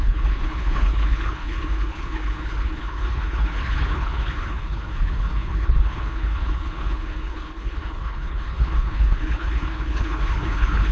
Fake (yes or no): yes